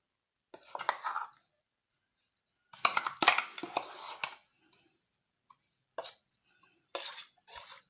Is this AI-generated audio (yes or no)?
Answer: no